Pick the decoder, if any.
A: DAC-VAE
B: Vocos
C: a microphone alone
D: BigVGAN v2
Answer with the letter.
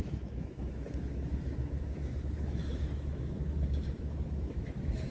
A